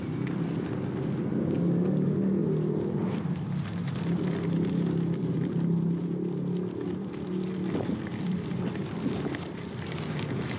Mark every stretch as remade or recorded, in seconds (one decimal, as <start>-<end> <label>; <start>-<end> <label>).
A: 0.0-2.4 remade; 2.4-6.9 recorded; 6.9-10.6 remade